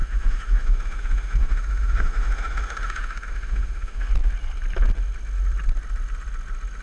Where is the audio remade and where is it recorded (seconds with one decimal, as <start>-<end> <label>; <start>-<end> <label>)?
0.0-4.1 remade; 4.1-6.8 recorded